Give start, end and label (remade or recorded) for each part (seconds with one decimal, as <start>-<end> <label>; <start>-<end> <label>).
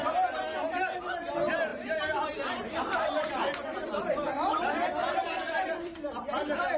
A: 0.0-1.7 recorded; 1.7-4.6 remade; 4.6-5.0 recorded; 5.0-6.8 remade